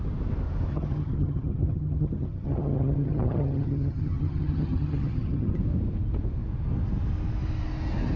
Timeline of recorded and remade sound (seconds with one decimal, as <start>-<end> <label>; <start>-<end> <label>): 0.0-0.7 recorded; 0.7-5.6 remade; 5.6-8.2 recorded